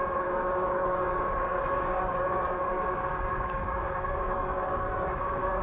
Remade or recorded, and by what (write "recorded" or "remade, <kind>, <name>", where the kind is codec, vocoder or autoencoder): remade, codec, DAC